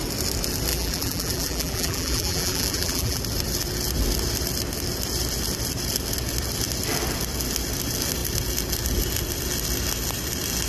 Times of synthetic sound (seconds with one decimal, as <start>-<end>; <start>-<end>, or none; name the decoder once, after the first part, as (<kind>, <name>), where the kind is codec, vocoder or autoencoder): 0.7-3.2 (vocoder, BigVGAN v2)